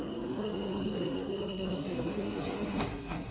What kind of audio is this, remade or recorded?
remade